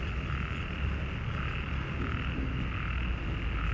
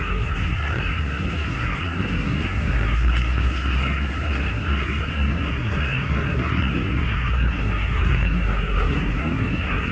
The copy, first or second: second